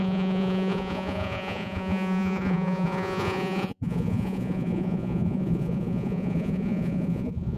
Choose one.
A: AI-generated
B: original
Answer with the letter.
A